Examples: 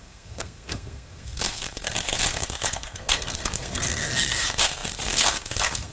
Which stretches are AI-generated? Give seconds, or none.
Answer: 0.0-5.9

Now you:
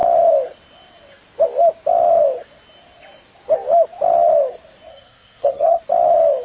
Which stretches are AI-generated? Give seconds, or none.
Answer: 4.9-5.8

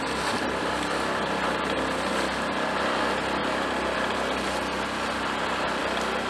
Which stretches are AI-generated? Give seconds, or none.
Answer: none

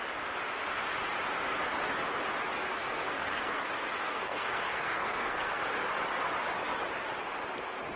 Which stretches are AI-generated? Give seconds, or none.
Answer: 2.7-5.6